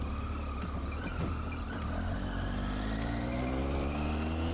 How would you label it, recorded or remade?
recorded